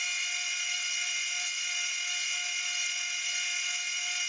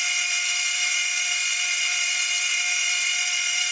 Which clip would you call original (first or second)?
first